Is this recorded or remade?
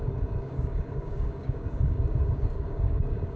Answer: remade